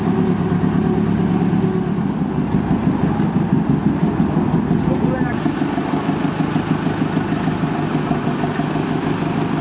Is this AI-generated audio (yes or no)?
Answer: no